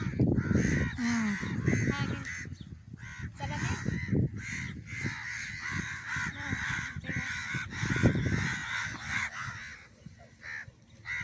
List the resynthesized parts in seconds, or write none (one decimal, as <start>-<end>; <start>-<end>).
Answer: 3.1-7.9